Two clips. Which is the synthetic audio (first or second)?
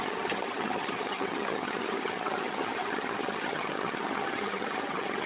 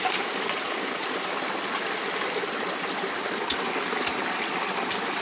first